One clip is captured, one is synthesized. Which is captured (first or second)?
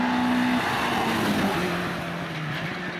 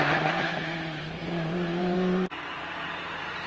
first